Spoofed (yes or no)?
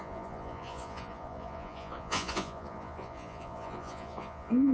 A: yes